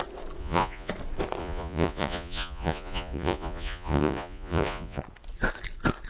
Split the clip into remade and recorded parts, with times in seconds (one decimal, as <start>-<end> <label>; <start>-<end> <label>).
0.0-0.4 recorded; 0.4-0.9 remade; 0.9-1.4 recorded; 1.4-5.0 remade; 5.0-6.1 recorded